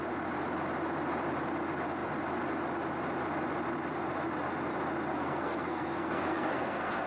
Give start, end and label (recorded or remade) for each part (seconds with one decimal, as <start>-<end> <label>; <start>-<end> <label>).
0.0-5.1 recorded; 5.1-7.1 remade